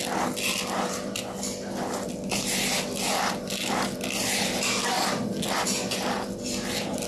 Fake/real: real